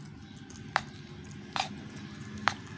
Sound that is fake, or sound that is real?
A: real